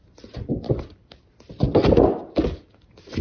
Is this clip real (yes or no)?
yes